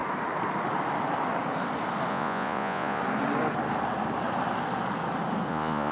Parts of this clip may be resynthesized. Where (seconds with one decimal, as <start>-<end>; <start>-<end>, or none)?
2.1-3.0; 5.5-5.9